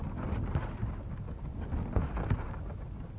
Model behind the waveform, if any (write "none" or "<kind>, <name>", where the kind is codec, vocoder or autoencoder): none